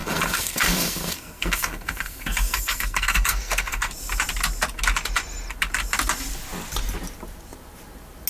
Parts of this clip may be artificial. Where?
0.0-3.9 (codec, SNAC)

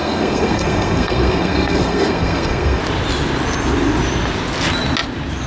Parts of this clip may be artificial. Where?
0.0-2.8 (codec, SNAC)

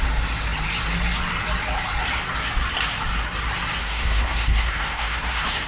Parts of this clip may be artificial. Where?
3.8-5.7 (codec, SNAC)

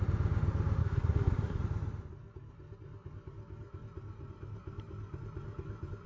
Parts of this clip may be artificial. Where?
0.8-1.6 (codec, SNAC)